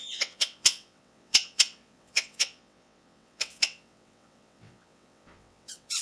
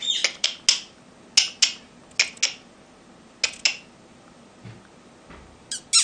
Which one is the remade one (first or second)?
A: first